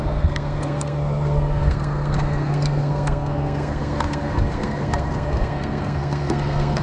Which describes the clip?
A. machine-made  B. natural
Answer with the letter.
A